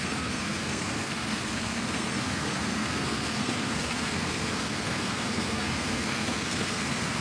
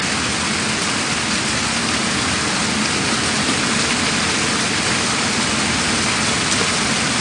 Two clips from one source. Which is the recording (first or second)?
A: second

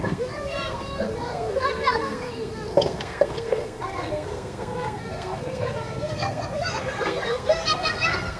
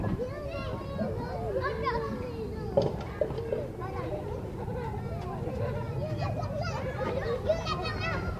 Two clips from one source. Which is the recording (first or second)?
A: second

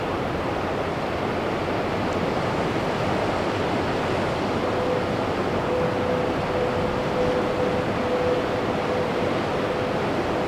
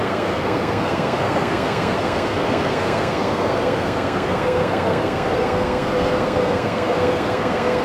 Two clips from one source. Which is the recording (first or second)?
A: first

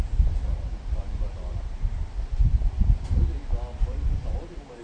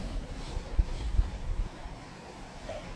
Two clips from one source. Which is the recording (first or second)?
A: first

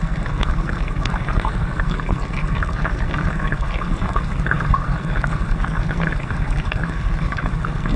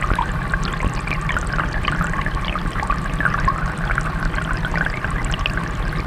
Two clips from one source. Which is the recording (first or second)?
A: second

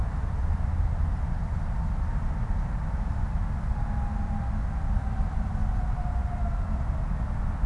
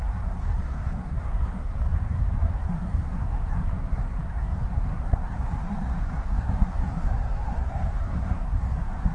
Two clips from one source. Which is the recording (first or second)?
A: first